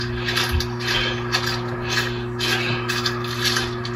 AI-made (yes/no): no